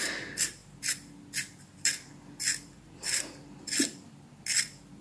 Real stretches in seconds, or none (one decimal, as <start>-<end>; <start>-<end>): 0.0-5.0